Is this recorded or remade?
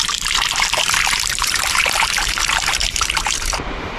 remade